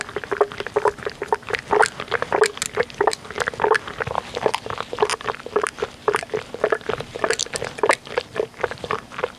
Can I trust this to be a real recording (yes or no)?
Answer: yes